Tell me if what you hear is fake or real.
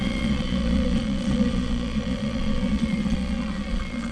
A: fake